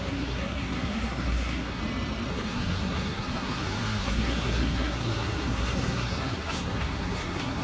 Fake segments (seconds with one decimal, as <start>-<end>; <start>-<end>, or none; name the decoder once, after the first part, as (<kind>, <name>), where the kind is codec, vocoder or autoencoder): 0.0-1.8 (codec, SNAC); 2.3-7.6